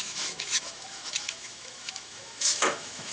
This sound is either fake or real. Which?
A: fake